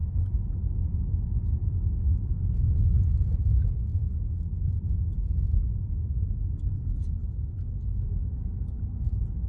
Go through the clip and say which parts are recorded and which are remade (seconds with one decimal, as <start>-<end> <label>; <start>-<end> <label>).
0.0-9.5 recorded